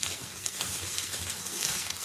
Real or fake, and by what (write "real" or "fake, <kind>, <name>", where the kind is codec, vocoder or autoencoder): fake, codec, SNAC